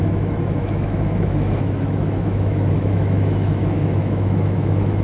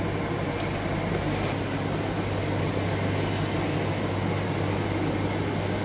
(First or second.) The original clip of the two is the second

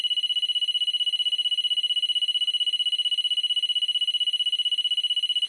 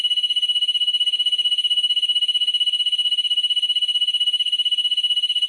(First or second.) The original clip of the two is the first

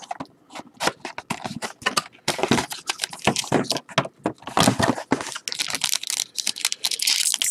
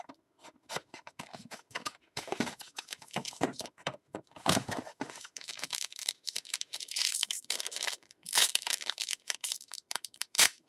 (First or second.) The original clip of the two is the first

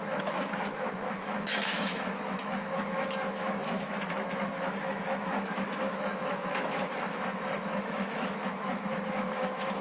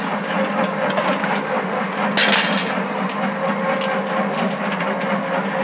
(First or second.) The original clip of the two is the second